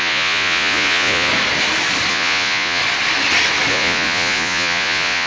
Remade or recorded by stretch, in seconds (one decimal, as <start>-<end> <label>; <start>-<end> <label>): 0.0-1.3 remade; 1.3-2.1 recorded; 2.1-2.8 remade; 2.8-3.7 recorded; 3.7-5.3 remade